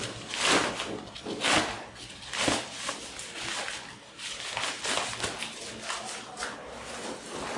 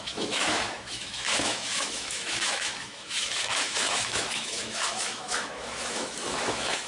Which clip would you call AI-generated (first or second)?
second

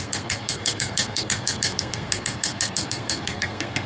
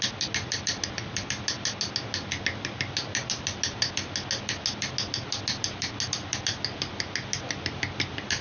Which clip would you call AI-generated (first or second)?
first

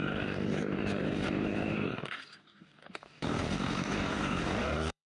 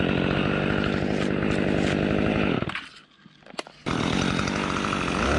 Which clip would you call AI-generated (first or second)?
first